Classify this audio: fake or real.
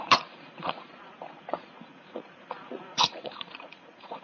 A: fake